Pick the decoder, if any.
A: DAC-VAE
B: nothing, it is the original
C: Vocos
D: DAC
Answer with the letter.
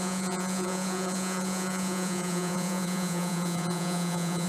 C